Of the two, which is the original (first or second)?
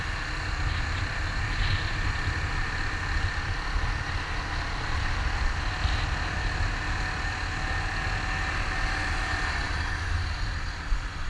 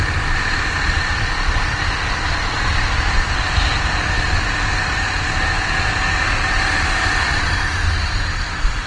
first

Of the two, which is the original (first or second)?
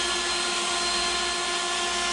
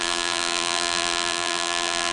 first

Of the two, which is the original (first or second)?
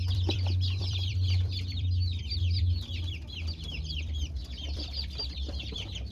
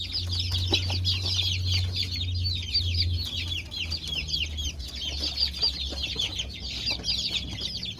second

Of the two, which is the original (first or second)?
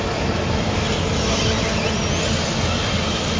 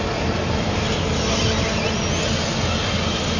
second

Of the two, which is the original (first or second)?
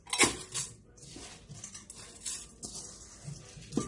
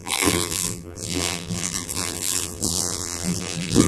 first